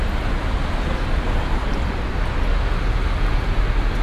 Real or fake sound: real